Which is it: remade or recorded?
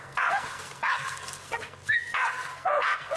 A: remade